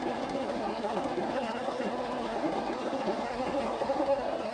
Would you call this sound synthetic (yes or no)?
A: yes